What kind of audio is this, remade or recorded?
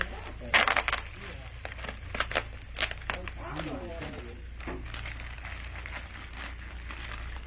recorded